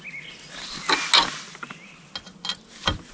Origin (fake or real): real